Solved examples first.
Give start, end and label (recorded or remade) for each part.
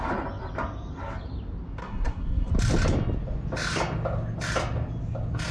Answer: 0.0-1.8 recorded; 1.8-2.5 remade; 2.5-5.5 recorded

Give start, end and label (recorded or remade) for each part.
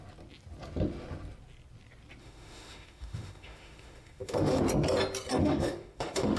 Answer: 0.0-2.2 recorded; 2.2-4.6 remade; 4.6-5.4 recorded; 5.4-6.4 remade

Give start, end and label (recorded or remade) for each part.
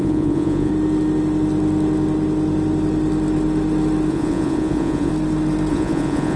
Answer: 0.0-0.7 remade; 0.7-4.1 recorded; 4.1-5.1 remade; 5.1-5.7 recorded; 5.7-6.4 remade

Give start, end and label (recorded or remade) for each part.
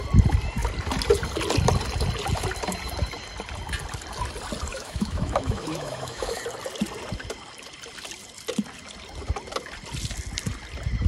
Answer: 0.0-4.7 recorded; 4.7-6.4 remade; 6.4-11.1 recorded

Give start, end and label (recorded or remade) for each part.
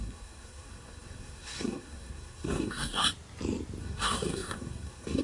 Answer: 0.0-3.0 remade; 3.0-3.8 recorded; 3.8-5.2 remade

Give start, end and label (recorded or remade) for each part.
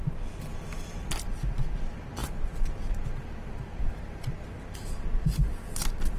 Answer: 0.0-1.3 recorded; 1.3-1.8 remade; 1.8-6.2 recorded